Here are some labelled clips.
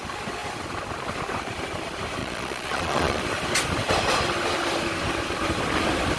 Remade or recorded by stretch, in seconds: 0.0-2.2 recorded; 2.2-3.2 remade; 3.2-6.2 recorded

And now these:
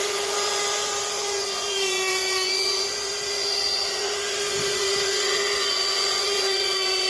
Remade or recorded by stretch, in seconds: 0.0-7.1 remade

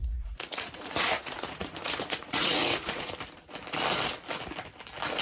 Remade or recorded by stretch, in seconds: 0.0-3.1 remade; 3.1-5.2 recorded